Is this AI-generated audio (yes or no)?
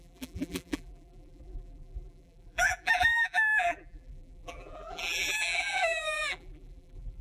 yes